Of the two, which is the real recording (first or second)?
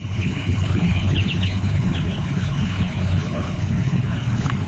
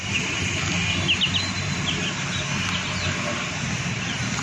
second